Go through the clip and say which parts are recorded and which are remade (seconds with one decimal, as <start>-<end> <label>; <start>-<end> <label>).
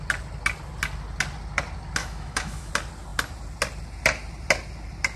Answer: 0.0-2.0 recorded; 2.0-2.7 remade; 2.7-5.2 recorded